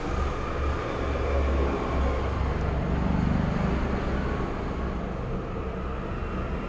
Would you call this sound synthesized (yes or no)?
no